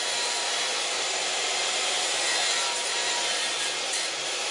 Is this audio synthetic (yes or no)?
yes